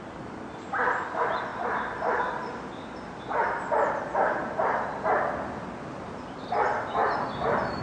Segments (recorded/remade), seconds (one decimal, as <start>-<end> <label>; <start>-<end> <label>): 0.0-7.8 recorded

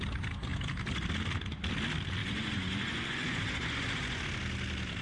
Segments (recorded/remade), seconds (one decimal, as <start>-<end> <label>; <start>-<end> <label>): 0.0-2.2 recorded; 2.2-4.2 remade; 4.2-5.0 recorded

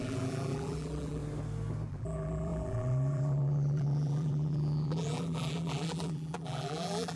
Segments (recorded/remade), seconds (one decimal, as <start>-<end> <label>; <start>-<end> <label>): 0.0-1.2 remade; 1.2-1.9 recorded; 1.9-7.2 remade

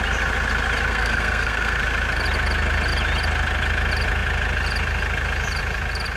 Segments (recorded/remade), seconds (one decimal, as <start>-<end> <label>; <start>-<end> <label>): 0.0-0.9 recorded; 0.9-1.8 remade; 1.8-6.2 recorded

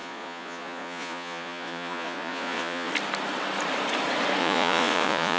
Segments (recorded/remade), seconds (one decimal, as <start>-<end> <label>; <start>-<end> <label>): 0.0-2.9 remade; 2.9-4.4 recorded; 4.4-5.4 remade

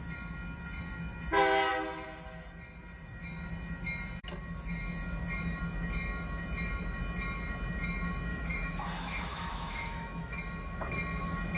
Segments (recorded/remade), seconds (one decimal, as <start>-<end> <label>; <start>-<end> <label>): 0.0-8.3 recorded; 8.3-10.4 remade; 10.4-11.6 recorded

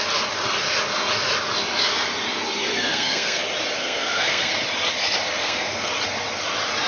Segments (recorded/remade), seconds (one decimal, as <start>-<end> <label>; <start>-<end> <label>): 0.0-2.7 recorded; 2.7-3.4 remade; 3.4-3.8 recorded; 3.8-4.5 remade; 4.5-5.4 recorded; 5.4-5.9 remade; 5.9-6.9 recorded